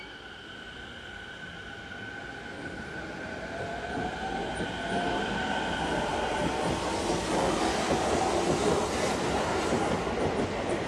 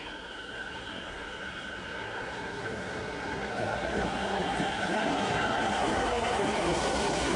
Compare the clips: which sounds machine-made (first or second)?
second